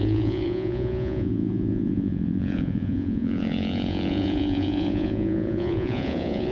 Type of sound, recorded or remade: remade